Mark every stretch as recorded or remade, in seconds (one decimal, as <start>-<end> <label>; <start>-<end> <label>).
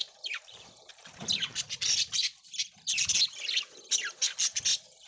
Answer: 0.0-0.9 remade; 0.9-5.1 recorded